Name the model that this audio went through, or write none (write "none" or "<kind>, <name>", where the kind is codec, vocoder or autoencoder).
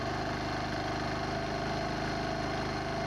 none